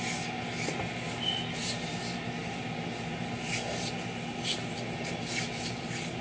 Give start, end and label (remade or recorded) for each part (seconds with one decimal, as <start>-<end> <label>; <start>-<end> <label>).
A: 0.0-6.2 recorded